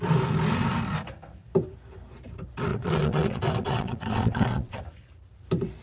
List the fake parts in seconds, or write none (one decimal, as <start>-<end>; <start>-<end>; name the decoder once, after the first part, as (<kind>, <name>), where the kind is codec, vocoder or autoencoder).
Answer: 2.7-4.8 (vocoder, WaveNeXt)

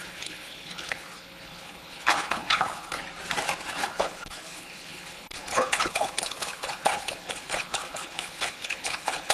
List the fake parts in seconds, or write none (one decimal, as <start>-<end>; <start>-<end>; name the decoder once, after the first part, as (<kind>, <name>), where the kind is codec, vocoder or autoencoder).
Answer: 0.0-3.0 (codec, HILCodec); 3.7-9.3

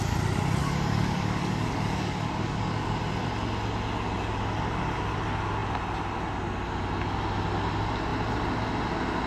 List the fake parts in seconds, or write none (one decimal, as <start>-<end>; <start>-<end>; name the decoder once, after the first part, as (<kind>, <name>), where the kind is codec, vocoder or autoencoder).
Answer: 0.6-3.0 (codec, DAC)

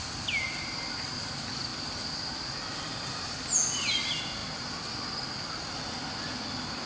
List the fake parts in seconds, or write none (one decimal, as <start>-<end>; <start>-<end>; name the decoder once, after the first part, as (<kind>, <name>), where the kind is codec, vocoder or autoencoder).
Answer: none

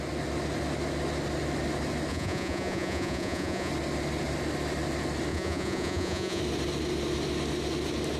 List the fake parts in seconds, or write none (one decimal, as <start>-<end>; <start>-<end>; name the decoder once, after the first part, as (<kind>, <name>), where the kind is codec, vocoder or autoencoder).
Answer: 2.1-3.7 (vocoder, Vocos); 5.3-6.4

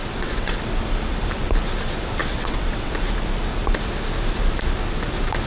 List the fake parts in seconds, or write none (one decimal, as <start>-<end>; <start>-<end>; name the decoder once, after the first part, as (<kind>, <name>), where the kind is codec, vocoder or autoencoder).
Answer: 0.0-0.6 (vocoder, WaveNeXt); 2.2-2.9